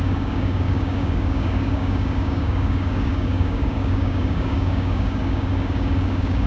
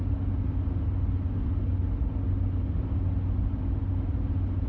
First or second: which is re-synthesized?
first